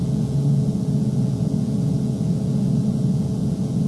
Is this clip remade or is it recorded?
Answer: remade